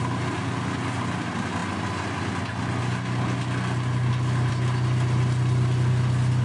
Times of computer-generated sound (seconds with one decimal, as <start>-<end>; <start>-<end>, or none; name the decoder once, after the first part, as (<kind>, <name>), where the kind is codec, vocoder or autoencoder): none

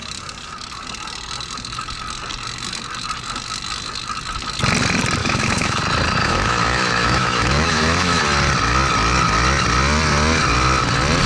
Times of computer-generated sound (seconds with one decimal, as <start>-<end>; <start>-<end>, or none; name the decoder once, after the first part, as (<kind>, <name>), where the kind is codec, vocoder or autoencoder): 5.2-5.8 (autoencoder, DAC-VAE); 6.2-8.2

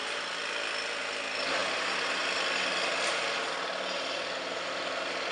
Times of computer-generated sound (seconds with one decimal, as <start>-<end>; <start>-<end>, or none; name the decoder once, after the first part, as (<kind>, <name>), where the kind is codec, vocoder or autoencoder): none

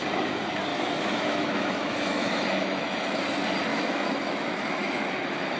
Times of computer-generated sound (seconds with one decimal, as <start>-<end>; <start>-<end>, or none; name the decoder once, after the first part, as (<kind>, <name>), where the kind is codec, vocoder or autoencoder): 0.7-3.2 (autoencoder, DAC-VAE); 3.7-5.1

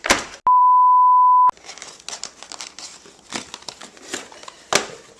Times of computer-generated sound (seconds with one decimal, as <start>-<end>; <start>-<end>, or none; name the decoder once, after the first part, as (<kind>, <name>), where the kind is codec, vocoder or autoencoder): none

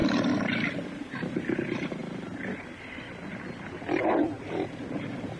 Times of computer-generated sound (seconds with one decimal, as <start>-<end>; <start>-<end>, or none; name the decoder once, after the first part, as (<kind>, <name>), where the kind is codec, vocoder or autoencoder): none